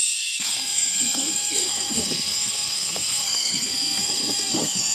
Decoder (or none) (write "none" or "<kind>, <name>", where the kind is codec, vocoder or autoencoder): codec, SNAC